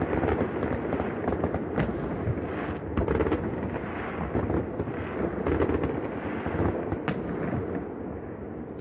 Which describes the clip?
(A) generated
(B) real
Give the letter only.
B